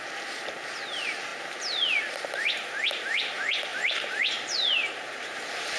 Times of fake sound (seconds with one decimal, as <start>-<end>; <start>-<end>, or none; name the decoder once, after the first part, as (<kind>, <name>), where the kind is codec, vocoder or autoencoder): 3.7-5.8 (vocoder, BigVGAN v2)